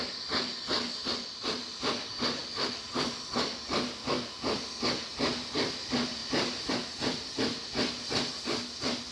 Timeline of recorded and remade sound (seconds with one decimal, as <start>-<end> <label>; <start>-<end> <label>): 0.0-6.2 recorded; 6.2-6.7 remade; 6.7-9.1 recorded